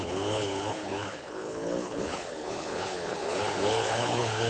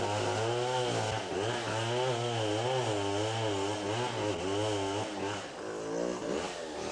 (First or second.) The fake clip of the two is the first